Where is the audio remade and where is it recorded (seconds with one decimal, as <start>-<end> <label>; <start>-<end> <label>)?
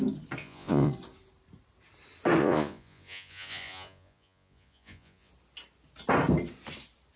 0.0-0.4 recorded; 0.4-0.9 remade; 0.9-2.4 recorded; 2.4-5.3 remade; 5.3-7.2 recorded